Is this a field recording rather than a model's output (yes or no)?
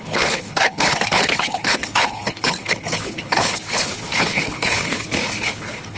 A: no